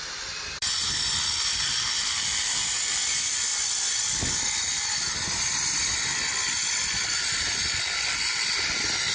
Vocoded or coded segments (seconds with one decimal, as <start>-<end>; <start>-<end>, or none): none